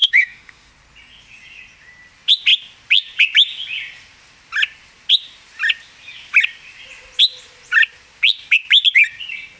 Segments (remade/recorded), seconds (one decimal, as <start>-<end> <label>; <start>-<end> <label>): 0.0-0.7 remade; 0.7-9.6 recorded